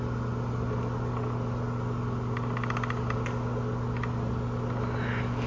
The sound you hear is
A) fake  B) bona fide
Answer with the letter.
B